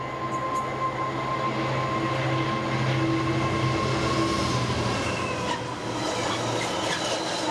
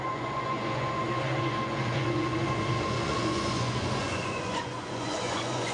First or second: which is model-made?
second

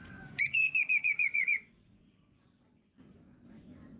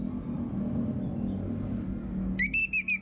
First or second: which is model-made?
first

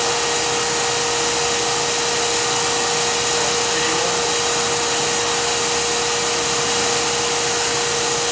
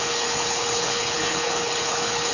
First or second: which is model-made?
second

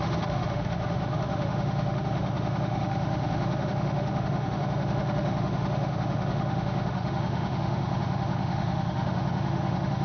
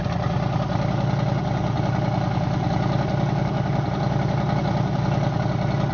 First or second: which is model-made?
first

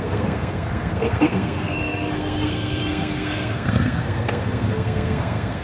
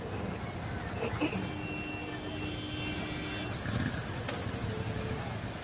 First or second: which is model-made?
first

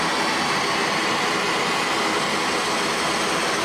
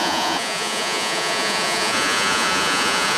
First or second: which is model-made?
second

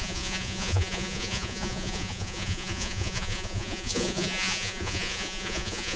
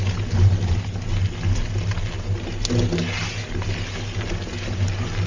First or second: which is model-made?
first